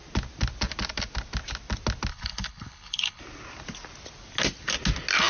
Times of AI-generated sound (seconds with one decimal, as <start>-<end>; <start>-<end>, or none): 2.1-3.2